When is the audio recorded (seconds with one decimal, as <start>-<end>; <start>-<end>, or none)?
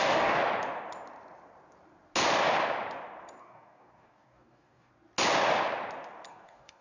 0.4-3.4; 4.9-6.3